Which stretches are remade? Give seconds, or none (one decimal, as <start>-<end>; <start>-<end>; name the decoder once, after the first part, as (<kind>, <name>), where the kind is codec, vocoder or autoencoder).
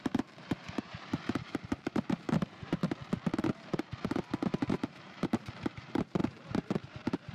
0.0-2.8 (vocoder, BigVGAN v2); 3.5-7.3